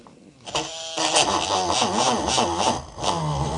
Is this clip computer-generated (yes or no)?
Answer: no